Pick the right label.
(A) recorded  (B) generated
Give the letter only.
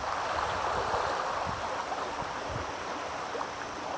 A